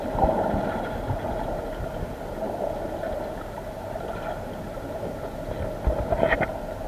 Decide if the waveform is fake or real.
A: real